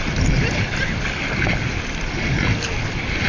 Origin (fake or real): real